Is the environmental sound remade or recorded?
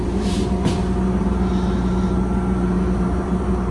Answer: remade